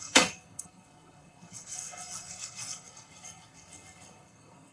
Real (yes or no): no